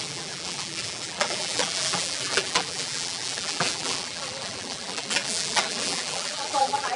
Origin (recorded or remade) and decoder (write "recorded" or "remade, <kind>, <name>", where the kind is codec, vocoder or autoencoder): remade, vocoder, BigVGAN v2